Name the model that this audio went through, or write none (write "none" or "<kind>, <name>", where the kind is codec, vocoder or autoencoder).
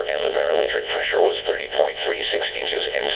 vocoder, WaveNeXt